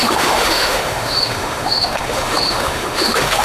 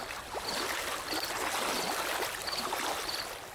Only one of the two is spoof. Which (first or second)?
first